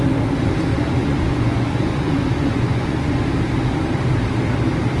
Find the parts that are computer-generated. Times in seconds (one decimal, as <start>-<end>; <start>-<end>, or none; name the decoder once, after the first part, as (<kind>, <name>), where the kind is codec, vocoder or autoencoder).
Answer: 0.7-3.2 (vocoder, Vocos)